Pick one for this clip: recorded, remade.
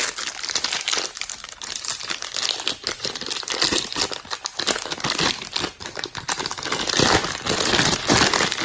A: recorded